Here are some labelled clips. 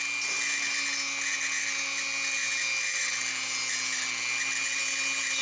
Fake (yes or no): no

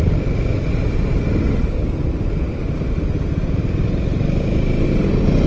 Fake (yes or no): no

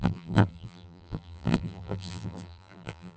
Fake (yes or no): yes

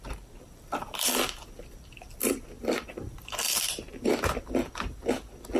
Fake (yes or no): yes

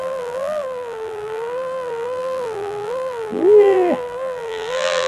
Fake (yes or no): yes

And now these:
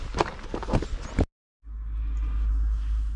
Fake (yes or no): no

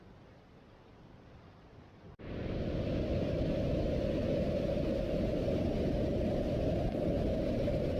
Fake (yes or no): yes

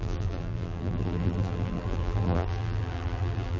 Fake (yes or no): yes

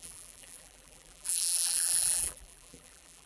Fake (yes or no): yes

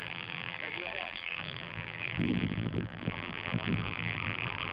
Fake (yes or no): yes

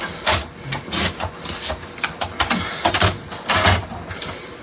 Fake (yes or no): no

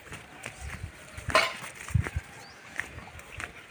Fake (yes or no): no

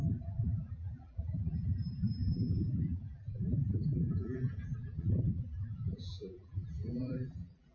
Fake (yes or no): yes